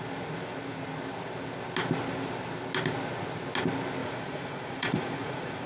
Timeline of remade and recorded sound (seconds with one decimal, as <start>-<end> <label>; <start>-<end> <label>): 0.0-4.0 recorded; 4.0-5.7 remade